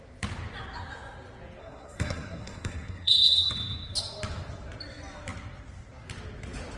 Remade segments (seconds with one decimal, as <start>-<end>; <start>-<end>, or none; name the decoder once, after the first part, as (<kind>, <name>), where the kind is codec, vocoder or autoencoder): 1.6-3.5 (codec, SNAC)